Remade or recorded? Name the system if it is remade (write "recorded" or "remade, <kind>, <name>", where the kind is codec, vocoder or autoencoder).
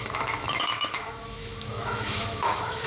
remade, autoencoder, DAC-VAE